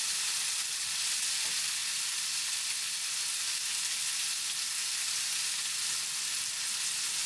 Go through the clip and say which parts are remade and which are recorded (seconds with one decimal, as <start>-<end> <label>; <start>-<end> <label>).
0.0-1.8 recorded; 1.8-2.5 remade; 2.5-7.3 recorded